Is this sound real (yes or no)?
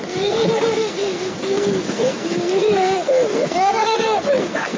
no